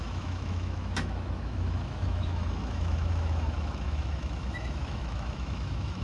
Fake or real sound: fake